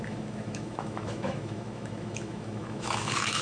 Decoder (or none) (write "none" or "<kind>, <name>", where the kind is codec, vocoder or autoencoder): autoencoder, DAC-VAE